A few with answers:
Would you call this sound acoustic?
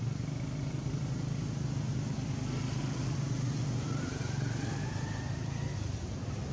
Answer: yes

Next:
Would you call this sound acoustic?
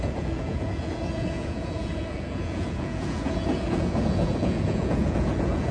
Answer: no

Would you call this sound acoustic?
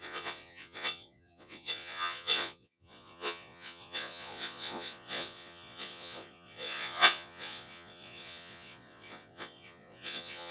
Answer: no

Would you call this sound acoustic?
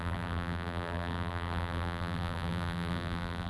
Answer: no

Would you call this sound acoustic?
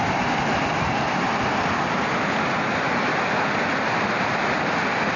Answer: yes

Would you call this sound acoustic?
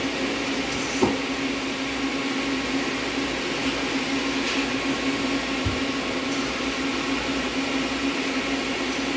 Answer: yes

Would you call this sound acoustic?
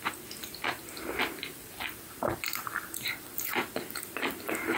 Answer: no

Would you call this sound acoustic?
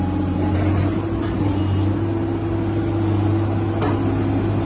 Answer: yes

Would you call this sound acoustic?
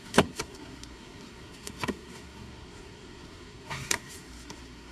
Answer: no